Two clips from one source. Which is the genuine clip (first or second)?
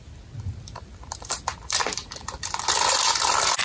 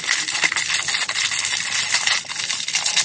second